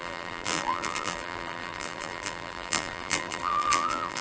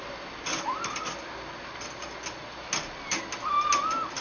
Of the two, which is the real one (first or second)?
second